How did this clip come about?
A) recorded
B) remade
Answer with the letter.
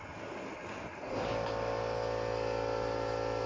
A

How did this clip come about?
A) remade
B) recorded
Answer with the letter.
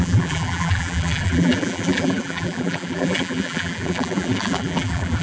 A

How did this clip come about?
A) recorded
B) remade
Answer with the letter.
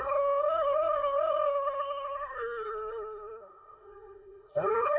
B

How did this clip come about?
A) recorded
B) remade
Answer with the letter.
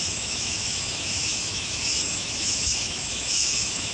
B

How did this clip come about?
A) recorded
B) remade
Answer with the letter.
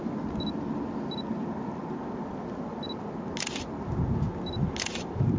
A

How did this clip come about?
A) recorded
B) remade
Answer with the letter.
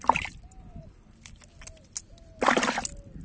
A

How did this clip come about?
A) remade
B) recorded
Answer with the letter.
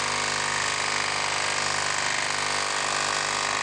B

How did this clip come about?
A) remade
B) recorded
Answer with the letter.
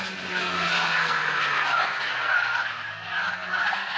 A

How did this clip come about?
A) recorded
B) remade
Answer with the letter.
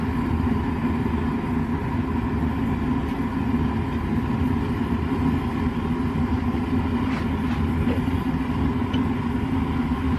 A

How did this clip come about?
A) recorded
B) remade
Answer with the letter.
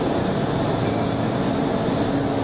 A